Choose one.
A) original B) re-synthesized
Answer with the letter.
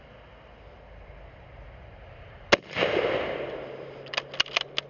A